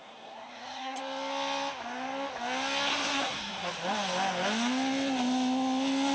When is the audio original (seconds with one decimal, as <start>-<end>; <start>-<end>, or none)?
1.0-2.9; 3.7-6.1